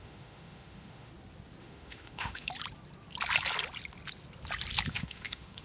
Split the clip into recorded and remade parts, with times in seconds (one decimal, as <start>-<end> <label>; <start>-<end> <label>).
0.0-1.1 remade; 1.1-1.6 recorded; 1.6-2.5 remade; 2.5-4.9 recorded; 4.9-5.6 remade